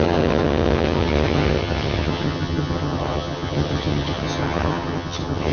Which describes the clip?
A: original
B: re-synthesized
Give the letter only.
B